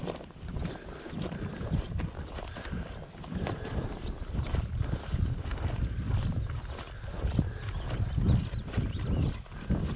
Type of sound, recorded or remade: recorded